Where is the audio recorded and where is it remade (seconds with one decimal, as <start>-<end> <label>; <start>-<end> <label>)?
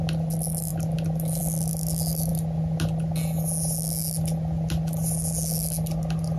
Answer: 0.0-6.4 recorded